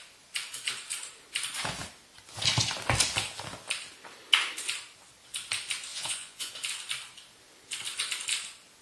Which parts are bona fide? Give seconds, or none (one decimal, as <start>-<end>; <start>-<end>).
0.0-5.9; 6.5-8.8